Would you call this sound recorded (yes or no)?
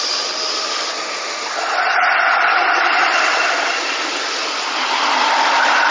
yes